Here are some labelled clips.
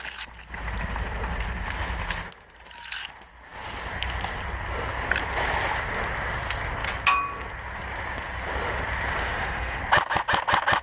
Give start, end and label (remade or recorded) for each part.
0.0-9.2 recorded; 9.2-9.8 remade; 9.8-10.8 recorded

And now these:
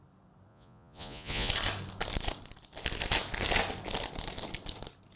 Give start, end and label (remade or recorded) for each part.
0.0-0.5 recorded; 0.5-1.5 remade; 1.5-5.2 recorded